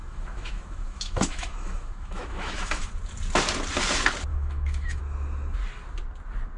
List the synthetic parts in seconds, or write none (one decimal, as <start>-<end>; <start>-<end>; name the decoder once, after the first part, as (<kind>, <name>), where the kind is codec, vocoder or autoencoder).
0.0-2.9 (autoencoder, DAC-VAE); 4.3-5.0